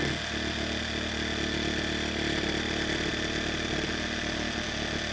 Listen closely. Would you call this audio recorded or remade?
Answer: recorded